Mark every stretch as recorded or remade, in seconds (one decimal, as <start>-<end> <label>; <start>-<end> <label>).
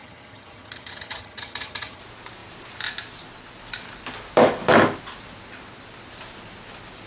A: 0.0-2.0 remade; 2.0-7.1 recorded